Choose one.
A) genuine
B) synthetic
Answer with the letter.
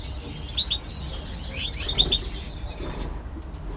A